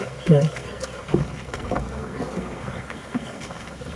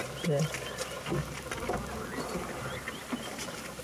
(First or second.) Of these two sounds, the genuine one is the second